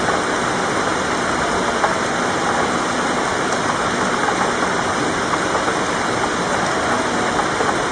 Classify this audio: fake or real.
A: real